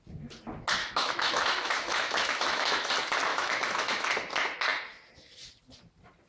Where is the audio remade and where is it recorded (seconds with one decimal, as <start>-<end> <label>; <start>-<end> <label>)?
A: 0.0-0.8 recorded; 0.8-2.9 remade; 2.9-3.3 recorded; 3.3-4.1 remade; 4.1-6.3 recorded